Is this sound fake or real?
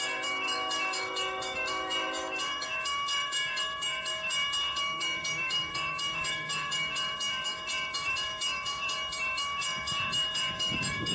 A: fake